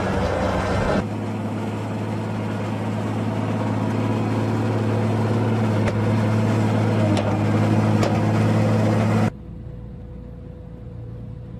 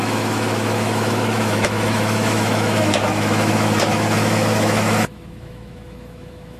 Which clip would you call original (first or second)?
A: first